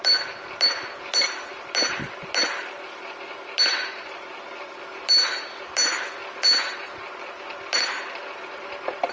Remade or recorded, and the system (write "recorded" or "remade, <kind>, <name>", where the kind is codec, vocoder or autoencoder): recorded